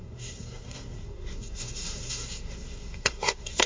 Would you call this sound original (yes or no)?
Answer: no